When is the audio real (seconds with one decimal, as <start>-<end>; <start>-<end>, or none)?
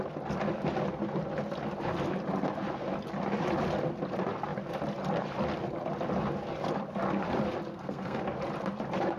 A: 0.0-7.7; 8.2-9.2